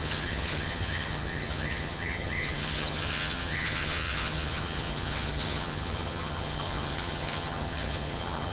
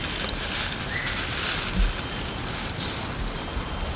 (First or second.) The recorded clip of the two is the second